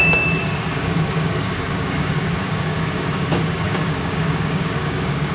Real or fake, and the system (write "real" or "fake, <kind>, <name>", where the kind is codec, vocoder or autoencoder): fake, codec, DAC